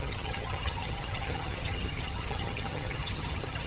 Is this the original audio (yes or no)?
no